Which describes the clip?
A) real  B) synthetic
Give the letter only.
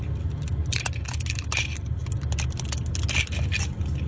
A